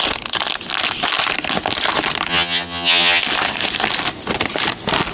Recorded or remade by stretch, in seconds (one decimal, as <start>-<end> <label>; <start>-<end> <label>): 0.0-2.3 recorded; 2.3-3.2 remade; 3.2-5.1 recorded